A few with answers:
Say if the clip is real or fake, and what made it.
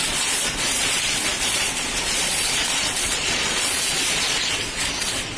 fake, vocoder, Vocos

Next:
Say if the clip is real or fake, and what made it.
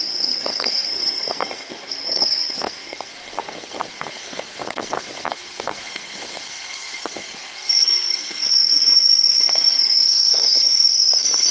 fake, codec, SNAC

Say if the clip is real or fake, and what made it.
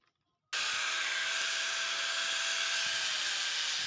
real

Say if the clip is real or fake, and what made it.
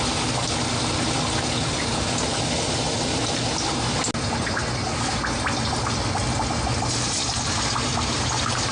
real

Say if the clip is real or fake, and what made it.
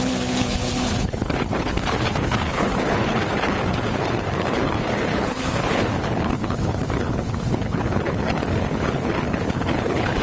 fake, codec, HILCodec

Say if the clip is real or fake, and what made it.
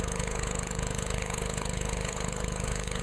fake, codec, HILCodec